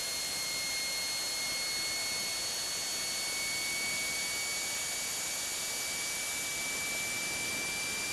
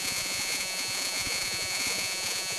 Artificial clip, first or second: second